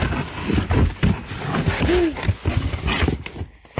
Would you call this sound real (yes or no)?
yes